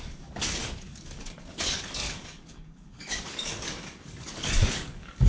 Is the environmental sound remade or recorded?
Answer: remade